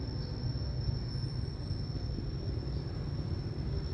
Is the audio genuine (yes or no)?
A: yes